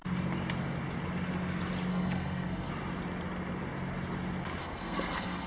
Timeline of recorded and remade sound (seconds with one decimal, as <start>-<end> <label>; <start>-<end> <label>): 0.0-1.9 recorded; 1.9-2.7 remade; 2.7-4.6 recorded; 4.6-5.5 remade